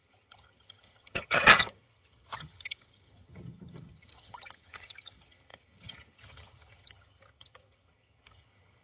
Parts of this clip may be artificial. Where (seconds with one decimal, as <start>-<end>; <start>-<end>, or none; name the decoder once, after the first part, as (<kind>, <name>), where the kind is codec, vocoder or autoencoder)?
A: 0.0-8.8 (vocoder, HiFi-GAN)